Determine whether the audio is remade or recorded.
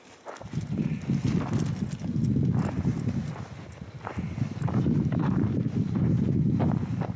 recorded